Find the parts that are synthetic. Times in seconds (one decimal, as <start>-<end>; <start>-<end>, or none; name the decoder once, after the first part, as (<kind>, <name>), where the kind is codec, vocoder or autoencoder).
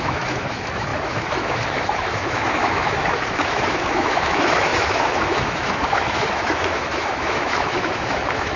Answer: 0.0-8.6 (autoencoder, DAC-VAE)